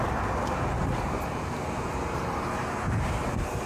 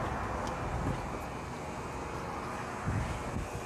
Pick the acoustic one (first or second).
second